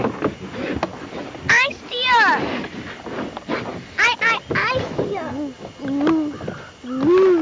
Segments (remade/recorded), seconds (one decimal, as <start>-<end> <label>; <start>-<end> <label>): 0.0-7.4 recorded